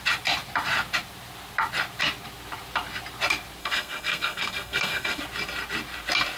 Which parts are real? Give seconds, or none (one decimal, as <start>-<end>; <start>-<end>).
0.0-3.6; 5.2-6.4